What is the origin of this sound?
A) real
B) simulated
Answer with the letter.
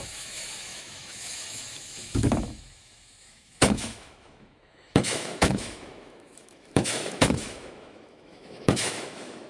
B